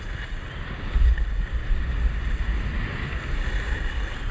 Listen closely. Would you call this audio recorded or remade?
recorded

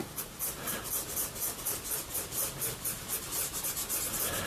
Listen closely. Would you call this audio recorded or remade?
recorded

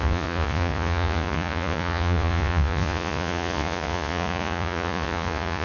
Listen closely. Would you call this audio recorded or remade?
remade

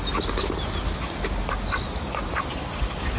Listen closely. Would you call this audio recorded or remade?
recorded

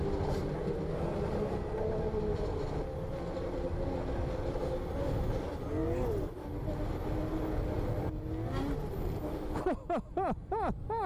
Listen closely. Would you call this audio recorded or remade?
recorded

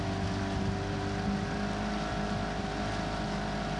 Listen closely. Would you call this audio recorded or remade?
recorded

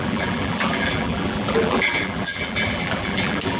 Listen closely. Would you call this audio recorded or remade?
remade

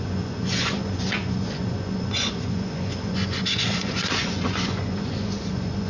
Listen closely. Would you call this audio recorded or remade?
remade